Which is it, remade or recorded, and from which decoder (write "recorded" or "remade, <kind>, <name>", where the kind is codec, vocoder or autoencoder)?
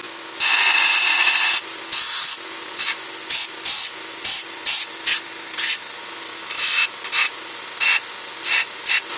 recorded